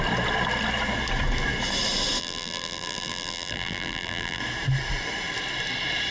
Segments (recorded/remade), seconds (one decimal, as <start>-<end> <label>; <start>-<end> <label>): 0.0-2.2 recorded; 2.2-4.4 remade; 4.4-6.1 recorded